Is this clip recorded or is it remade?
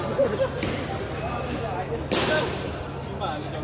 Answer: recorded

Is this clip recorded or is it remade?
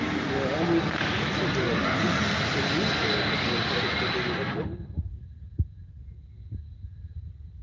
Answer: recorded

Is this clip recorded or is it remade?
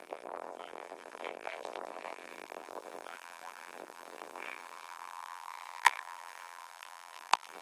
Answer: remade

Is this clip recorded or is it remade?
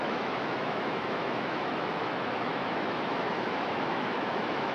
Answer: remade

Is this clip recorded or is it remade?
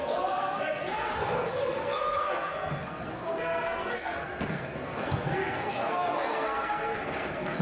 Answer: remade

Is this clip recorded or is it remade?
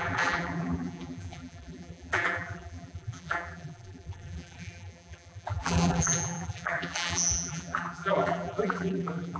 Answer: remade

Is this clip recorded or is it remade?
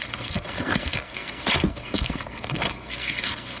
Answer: remade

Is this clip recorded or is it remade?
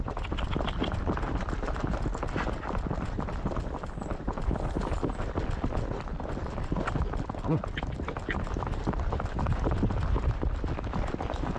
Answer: recorded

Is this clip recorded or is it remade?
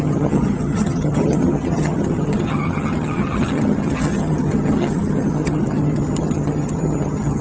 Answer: remade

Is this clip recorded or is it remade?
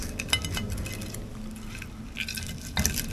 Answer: recorded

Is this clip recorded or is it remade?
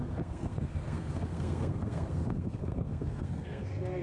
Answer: remade